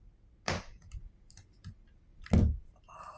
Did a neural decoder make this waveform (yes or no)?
no